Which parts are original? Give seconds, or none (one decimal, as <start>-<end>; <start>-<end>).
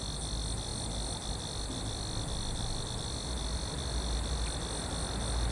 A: 0.0-5.5